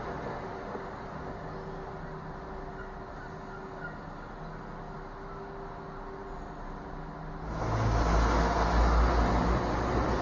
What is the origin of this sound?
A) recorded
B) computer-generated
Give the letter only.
A